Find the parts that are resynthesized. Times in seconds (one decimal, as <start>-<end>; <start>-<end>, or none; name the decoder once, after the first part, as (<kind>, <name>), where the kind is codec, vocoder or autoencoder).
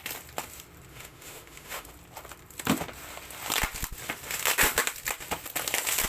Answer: 0.9-1.9 (autoencoder, DAC-VAE)